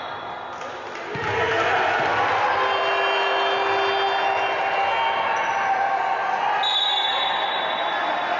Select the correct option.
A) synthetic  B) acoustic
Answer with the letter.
B